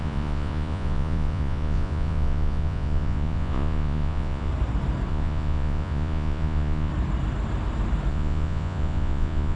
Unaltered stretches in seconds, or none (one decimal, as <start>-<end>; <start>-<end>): 4.5-5.1; 6.9-8.1